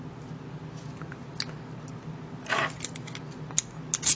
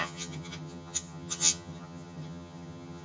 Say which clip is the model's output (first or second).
second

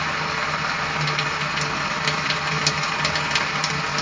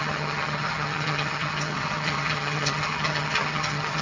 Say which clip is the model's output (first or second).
second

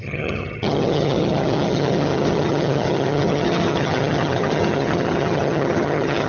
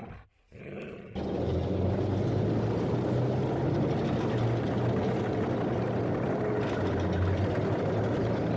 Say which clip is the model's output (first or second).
first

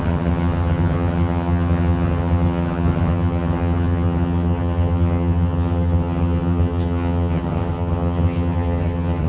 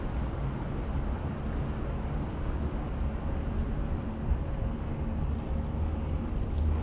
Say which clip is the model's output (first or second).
first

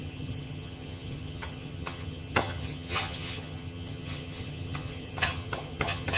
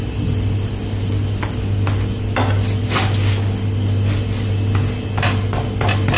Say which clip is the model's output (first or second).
first